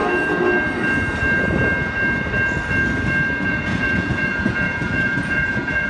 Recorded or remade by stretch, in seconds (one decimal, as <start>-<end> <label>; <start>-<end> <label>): 0.0-3.5 recorded; 3.5-5.9 remade

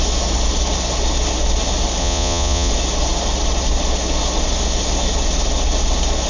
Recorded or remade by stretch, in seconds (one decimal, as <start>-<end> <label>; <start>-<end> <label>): 0.0-2.0 recorded; 2.0-2.7 remade; 2.7-6.3 recorded

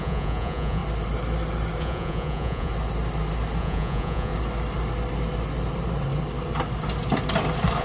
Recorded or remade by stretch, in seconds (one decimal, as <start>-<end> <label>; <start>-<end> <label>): 0.0-0.8 remade; 0.8-1.8 recorded; 1.8-2.7 remade; 2.7-3.6 recorded; 3.6-4.3 remade; 4.3-7.8 recorded

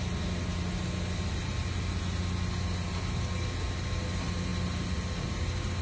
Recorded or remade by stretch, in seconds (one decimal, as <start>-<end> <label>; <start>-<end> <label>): 0.0-5.8 recorded

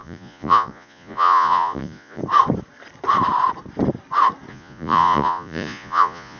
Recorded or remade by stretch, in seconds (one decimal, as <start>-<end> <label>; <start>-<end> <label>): 0.0-2.2 remade; 2.2-4.5 recorded; 4.5-6.4 remade